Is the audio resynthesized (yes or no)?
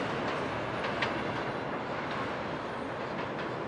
no